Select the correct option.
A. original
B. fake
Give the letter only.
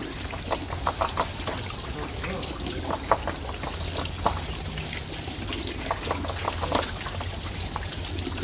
A